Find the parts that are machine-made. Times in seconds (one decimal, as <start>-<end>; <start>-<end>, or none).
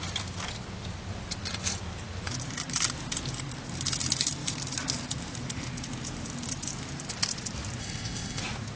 7.8-8.4